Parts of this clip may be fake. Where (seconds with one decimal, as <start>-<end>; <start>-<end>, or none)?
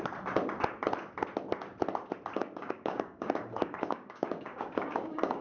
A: 2.4-5.4